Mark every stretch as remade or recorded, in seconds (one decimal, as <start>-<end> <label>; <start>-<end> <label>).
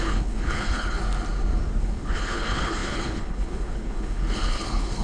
0.0-1.0 remade; 1.0-1.8 recorded; 1.8-5.0 remade